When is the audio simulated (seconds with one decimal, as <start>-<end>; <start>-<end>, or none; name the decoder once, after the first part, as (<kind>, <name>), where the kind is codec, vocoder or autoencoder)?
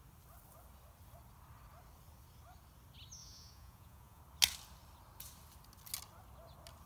3.2-4.2 (vocoder, Vocos)